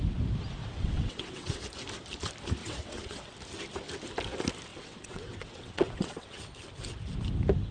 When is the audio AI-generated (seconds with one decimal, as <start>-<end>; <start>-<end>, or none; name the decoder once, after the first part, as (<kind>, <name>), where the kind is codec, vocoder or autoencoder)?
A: 0.6-1.6 (vocoder, WaveNeXt); 2.6-3.2; 4.7-6.4